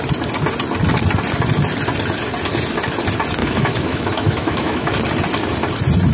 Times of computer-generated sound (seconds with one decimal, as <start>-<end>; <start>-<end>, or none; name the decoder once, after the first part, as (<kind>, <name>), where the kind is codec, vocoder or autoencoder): 3.4-4.9 (autoencoder, DAC-VAE)